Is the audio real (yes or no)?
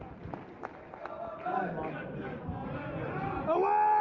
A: yes